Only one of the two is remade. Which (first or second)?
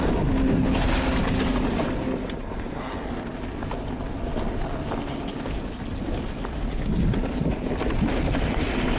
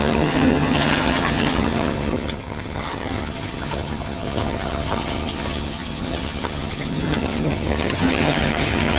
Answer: second